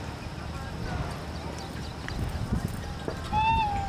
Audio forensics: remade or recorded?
recorded